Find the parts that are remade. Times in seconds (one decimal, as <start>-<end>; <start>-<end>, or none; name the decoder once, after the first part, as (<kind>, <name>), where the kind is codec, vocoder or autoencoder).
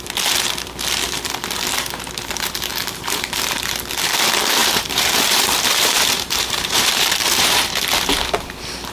2.7-3.7 (vocoder, BigVGAN v2); 4.6-7.8